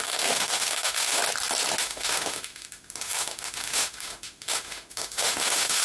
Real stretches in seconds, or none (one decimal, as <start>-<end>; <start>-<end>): 1.2-1.8